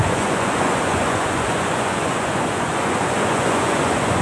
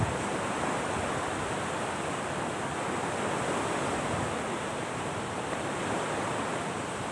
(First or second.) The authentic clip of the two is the second